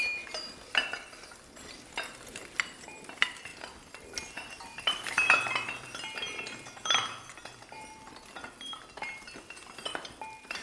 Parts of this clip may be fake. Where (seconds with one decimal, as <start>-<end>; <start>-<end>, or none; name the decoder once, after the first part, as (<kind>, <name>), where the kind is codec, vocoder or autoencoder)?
0.0-3.5 (vocoder, BigVGAN v2); 4.3-10.6